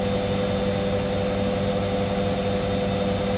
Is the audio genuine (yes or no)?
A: yes